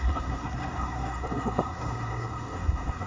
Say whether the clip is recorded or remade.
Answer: remade